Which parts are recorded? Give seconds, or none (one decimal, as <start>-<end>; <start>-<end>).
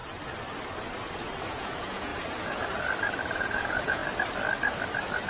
0.0-1.5; 2.1-3.2; 4.0-5.3